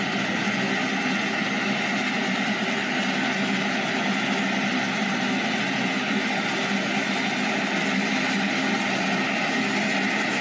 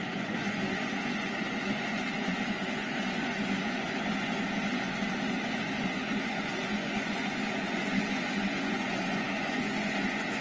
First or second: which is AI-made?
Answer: second